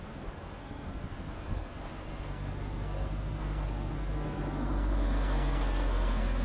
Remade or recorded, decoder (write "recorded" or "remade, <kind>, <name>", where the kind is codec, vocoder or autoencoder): remade, codec, SNAC